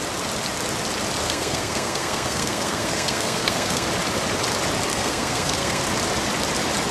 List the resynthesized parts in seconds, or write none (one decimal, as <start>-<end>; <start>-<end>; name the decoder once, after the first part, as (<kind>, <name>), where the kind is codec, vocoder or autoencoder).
1.2-3.9 (codec, SNAC); 4.9-5.8